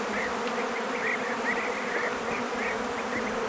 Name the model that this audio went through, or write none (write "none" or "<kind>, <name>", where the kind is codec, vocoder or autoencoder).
none